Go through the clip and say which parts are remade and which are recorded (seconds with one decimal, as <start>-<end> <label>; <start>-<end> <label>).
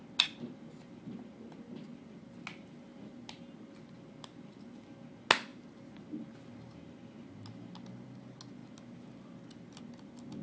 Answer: 0.0-10.4 recorded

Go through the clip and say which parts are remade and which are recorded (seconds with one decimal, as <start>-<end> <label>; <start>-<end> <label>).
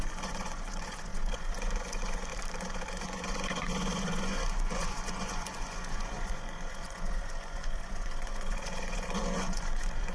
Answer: 0.0-2.3 remade; 2.3-2.9 recorded; 2.9-10.1 remade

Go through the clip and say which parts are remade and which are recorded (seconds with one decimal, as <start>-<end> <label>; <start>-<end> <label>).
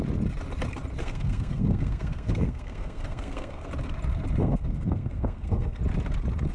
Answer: 0.0-1.0 recorded; 1.0-3.7 remade; 3.7-4.4 recorded; 4.4-5.8 remade; 5.8-6.5 recorded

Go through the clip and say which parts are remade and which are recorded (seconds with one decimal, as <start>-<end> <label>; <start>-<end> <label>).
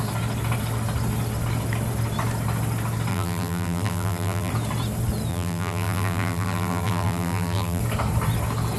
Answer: 0.0-3.1 recorded; 3.1-4.5 remade; 4.5-5.3 recorded; 5.3-7.8 remade; 7.8-8.8 recorded